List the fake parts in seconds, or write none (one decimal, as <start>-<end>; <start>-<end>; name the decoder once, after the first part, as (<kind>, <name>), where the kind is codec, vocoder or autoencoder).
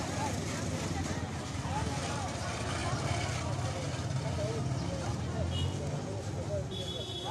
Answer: none